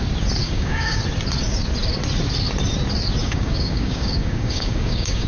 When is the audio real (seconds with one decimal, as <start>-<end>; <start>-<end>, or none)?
0.0-0.4; 1.0-3.2

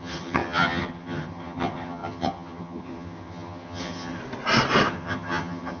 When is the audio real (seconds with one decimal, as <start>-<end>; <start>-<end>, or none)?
4.2-4.9

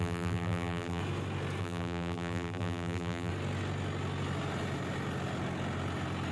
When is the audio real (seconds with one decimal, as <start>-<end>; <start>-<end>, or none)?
1.0-1.6; 3.3-6.3

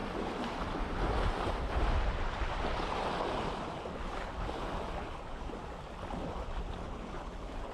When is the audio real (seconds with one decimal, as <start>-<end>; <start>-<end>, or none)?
0.0-7.7

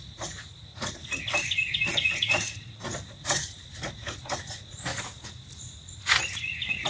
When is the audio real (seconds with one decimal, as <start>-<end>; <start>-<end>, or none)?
1.0-1.9